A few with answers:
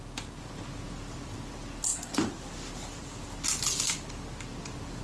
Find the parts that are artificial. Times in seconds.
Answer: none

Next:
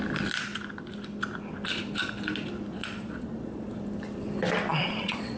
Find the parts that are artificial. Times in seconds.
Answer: 2.7-3.7 (vocoder, Vocos); 4.7-5.4

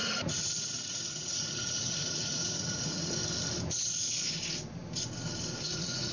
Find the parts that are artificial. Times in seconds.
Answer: 0.0-3.2 (vocoder, Vocos); 5.6-6.1